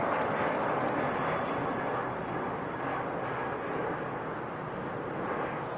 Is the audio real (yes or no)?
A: yes